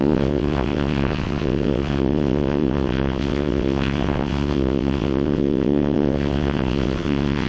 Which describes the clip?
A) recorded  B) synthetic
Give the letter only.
B